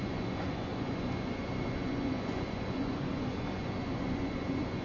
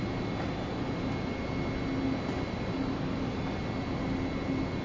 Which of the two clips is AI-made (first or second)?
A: first